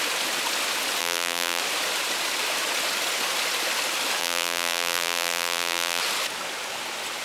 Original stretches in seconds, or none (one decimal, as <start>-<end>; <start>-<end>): 0.0-1.0; 1.6-4.2; 6.0-7.2